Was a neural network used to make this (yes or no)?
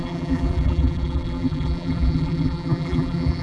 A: yes